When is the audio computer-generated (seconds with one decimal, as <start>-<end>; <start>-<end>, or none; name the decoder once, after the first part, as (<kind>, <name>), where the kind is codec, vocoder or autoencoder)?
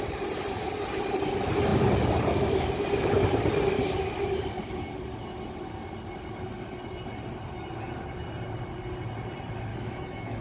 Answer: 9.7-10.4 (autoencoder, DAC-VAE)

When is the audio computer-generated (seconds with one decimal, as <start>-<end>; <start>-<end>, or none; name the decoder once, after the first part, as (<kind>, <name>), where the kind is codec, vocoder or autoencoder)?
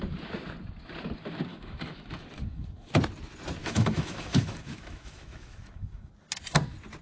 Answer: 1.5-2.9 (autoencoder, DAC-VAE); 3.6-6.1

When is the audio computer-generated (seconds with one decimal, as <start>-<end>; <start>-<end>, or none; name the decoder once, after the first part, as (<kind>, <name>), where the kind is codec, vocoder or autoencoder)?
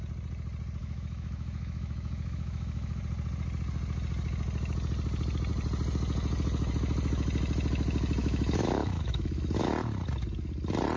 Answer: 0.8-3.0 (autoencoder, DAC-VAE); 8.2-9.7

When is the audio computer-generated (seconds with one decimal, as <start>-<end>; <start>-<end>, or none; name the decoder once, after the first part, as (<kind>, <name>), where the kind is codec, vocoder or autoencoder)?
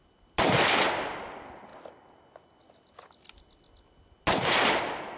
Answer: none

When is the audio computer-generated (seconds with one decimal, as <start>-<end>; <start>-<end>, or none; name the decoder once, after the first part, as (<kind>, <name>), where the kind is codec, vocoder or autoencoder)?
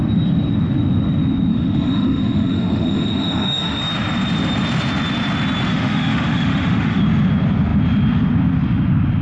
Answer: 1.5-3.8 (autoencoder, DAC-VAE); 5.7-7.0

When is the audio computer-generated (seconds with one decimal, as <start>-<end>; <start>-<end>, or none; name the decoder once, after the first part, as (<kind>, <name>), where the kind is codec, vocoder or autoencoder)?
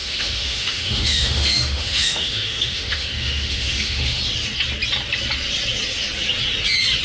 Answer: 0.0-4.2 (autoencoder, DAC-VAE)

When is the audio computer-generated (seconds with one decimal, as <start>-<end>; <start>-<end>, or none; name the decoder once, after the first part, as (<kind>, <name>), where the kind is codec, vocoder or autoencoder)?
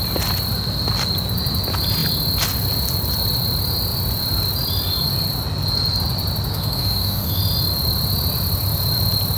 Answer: 6.5-7.4 (autoencoder, DAC-VAE)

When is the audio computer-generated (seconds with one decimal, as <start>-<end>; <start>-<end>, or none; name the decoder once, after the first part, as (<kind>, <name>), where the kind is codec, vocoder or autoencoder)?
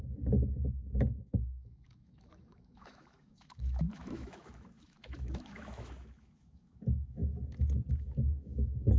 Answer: 0.0-7.2 (autoencoder, DAC-VAE); 7.9-9.0